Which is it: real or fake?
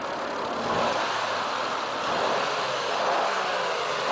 real